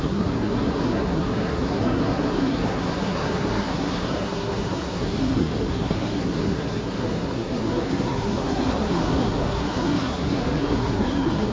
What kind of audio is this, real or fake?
fake